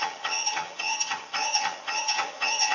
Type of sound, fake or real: fake